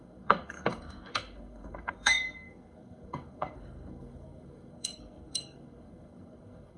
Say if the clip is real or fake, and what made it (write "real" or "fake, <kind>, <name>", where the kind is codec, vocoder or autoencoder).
fake, codec, SNAC